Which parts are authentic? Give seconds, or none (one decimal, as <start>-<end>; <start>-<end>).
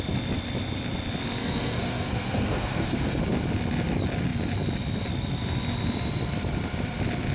0.0-1.4; 3.2-7.3